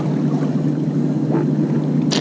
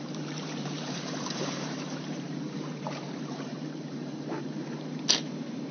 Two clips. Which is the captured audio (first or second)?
first